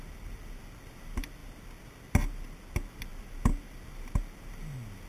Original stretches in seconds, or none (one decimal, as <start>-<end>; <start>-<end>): 0.0-5.1